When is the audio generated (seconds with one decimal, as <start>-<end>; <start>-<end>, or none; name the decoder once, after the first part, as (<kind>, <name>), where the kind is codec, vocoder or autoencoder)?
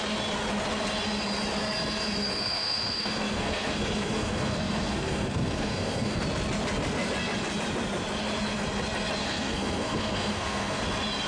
2.3-6.2 (codec, SNAC); 9.2-10.8